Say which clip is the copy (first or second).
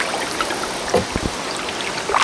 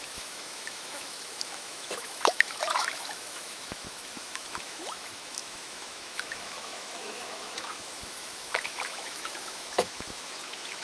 second